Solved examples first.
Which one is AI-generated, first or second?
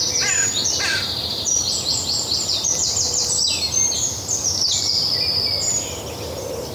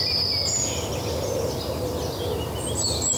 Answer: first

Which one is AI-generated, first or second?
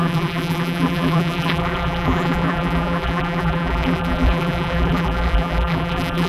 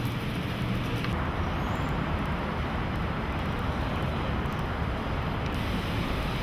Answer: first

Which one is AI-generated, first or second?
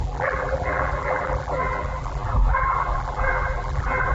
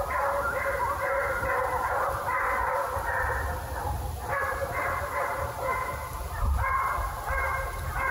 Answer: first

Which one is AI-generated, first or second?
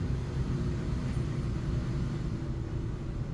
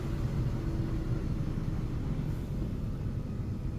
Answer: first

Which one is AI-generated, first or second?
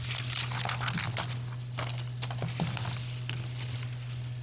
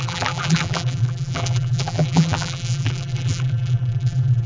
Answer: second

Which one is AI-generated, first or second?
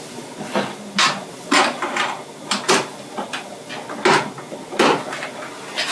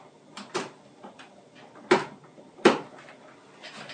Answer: second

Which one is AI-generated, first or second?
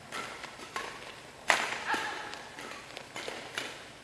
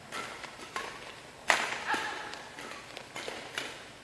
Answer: first